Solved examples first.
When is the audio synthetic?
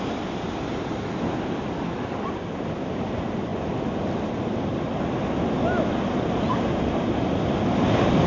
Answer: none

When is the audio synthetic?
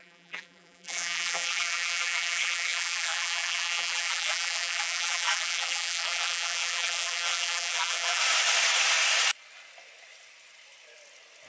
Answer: 0.0-8.2 (vocoder, BigVGAN v2)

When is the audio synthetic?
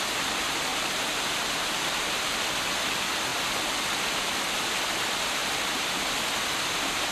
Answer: 0.7-1.9 (vocoder, BigVGAN v2); 5.4-6.0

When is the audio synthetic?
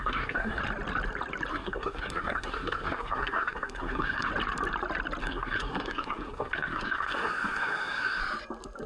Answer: 0.0-0.6 (codec, SNAC); 1.5-4.3; 5.2-8.2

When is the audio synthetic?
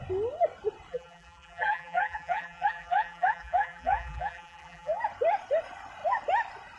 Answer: 0.9-5.0 (vocoder, BigVGAN v2)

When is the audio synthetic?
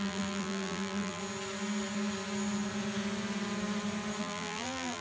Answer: 0.0-1.2 (vocoder, BigVGAN v2); 4.2-5.0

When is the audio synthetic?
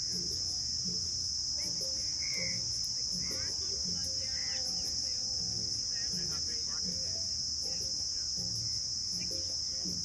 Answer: none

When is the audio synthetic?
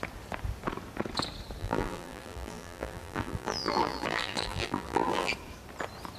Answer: 1.6-5.3 (vocoder, BigVGAN v2)